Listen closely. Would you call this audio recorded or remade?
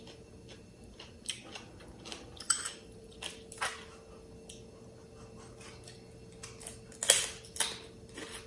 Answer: recorded